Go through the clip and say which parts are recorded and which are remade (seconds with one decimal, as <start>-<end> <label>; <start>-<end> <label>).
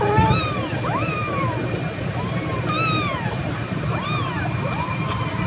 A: 0.0-5.5 recorded